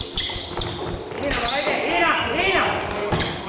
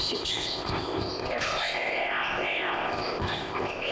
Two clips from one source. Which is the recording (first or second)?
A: first